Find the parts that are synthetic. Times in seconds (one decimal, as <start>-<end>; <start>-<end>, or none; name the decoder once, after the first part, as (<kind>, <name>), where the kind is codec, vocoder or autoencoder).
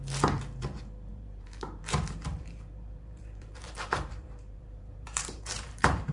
1.1-1.8 (vocoder, BigVGAN v2); 2.3-6.1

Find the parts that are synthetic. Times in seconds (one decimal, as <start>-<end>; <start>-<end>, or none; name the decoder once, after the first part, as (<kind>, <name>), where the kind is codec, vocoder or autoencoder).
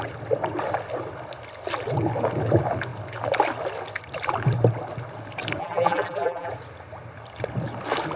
5.6-6.5 (vocoder, BigVGAN v2)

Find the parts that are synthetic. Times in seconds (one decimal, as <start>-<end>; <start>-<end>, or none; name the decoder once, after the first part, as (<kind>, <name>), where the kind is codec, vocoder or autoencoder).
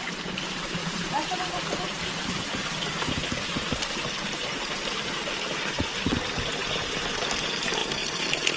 0.0-7.8 (vocoder, BigVGAN v2)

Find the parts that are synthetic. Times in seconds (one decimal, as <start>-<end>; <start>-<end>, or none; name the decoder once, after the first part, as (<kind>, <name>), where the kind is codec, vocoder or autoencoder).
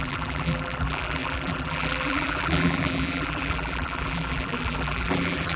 0.0-5.6 (vocoder, BigVGAN v2)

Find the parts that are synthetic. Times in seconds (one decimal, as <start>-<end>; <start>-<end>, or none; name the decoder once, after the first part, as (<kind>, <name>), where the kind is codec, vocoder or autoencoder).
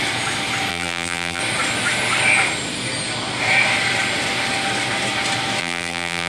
0.7-1.4 (vocoder, BigVGAN v2); 5.6-6.3